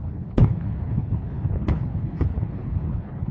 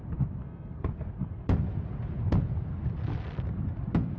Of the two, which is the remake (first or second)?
first